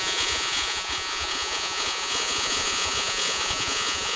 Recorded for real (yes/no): no